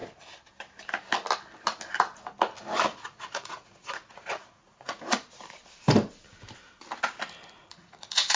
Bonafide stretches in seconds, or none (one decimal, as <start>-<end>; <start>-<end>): 0.0-2.9; 5.1-7.6